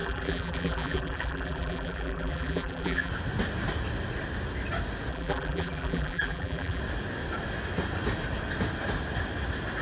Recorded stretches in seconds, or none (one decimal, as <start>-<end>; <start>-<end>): 3.1-5.1; 6.8-9.8